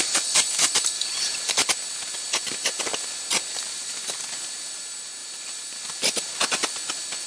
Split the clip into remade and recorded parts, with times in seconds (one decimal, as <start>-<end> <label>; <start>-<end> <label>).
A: 0.0-3.7 recorded; 3.7-4.3 remade; 4.3-7.3 recorded

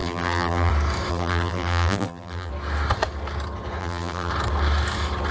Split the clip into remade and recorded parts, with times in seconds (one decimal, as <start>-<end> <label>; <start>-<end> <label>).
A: 0.0-0.7 remade; 0.7-1.1 recorded; 1.1-2.5 remade; 2.5-3.8 recorded; 3.8-4.3 remade; 4.3-5.3 recorded

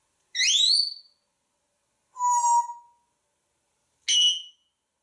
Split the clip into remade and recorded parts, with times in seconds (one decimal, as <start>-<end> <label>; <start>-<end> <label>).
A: 0.0-5.0 recorded

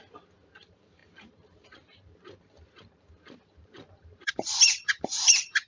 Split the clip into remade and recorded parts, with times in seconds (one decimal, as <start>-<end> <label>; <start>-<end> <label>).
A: 0.0-5.7 remade